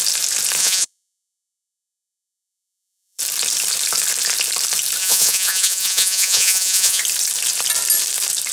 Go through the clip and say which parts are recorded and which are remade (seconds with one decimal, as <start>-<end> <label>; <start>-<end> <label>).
0.0-0.6 recorded; 0.6-3.2 remade; 3.2-5.0 recorded; 5.0-7.0 remade; 7.0-8.5 recorded